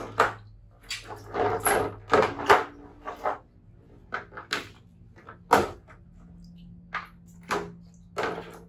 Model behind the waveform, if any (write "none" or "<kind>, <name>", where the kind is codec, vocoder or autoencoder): none